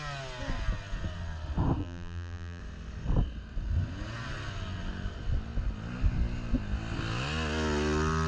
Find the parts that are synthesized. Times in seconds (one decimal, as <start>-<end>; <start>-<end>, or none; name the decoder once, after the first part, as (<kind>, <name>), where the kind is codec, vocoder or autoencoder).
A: 1.8-2.6 (vocoder, BigVGAN v2)